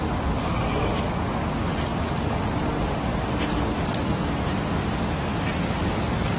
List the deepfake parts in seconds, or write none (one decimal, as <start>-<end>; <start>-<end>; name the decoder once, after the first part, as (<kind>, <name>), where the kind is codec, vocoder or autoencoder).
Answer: none